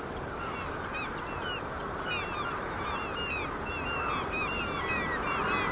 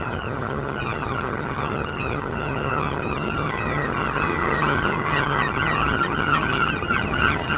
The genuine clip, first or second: first